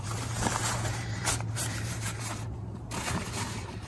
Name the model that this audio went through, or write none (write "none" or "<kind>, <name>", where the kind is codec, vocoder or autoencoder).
vocoder, BigVGAN v2